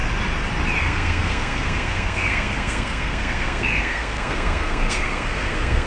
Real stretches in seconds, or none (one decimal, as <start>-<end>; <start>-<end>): 0.0-0.8